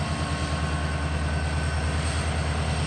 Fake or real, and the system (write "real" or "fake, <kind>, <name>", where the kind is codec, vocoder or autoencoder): real